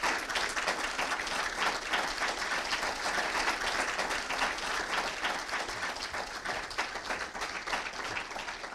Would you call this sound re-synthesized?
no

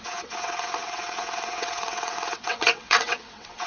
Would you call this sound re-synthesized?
yes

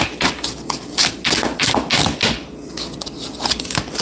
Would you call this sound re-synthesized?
no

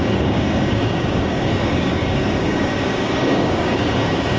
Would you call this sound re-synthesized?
yes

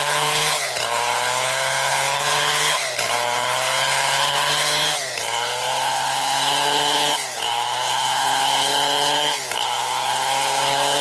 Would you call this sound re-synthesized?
yes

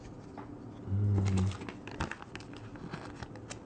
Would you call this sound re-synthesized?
no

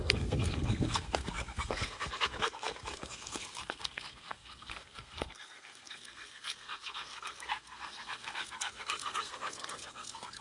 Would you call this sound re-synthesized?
yes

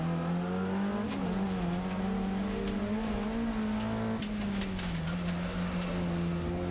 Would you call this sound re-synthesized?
no